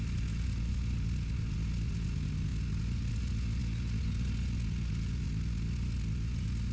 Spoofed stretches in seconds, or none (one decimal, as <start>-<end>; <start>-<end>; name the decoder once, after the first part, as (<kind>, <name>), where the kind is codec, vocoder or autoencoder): none